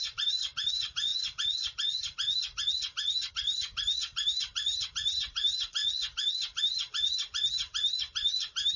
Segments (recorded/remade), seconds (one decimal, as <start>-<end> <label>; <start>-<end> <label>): 0.0-1.1 remade; 1.1-3.3 recorded; 3.3-5.8 remade; 5.8-6.6 recorded; 6.6-8.8 remade